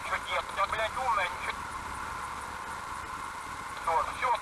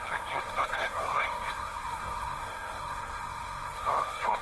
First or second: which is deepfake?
second